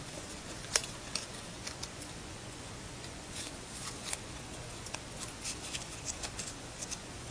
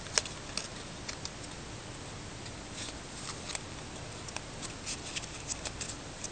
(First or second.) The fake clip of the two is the first